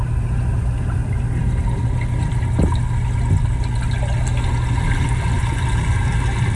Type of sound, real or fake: real